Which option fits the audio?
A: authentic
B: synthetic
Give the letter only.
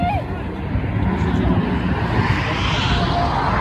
A